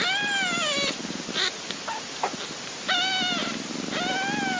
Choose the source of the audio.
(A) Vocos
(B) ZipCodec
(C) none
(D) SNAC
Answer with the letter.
C